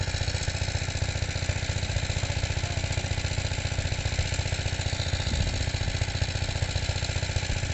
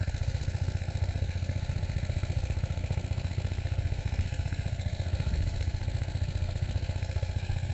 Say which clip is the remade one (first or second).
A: second